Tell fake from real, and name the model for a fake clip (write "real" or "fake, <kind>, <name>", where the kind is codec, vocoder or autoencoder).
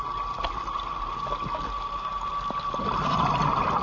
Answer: real